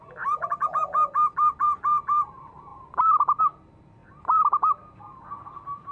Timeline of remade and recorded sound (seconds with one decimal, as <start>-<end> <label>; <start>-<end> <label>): 0.0-5.9 recorded